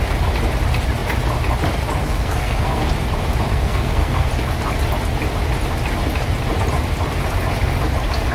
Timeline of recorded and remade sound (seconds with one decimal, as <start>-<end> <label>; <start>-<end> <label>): 0.0-2.0 recorded; 2.0-2.9 remade; 2.9-3.5 recorded; 3.5-4.3 remade; 4.3-8.3 recorded